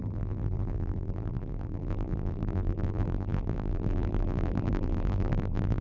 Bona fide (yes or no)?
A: no